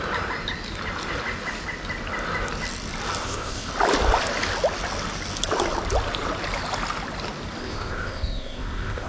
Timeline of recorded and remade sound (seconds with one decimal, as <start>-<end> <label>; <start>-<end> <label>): 0.0-3.2 recorded; 3.2-3.7 remade; 3.7-7.6 recorded; 7.6-9.1 remade